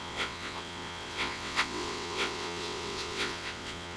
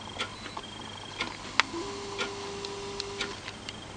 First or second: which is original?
second